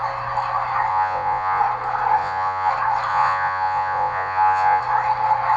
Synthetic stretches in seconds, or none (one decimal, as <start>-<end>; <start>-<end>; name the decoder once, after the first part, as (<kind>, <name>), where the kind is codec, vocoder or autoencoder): 0.9-1.6 (vocoder, Vocos); 2.2-2.7; 3.1-4.8